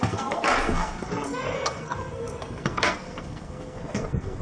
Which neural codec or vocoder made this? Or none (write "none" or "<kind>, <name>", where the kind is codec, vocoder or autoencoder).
codec, SNAC